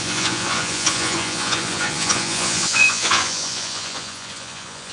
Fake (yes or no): yes